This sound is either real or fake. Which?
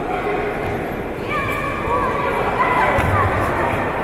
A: real